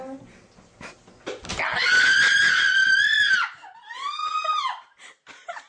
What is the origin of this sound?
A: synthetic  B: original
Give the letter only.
B